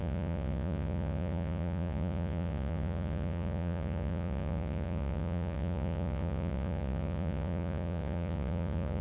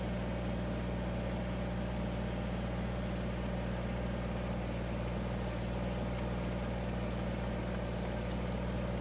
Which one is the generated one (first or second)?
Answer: first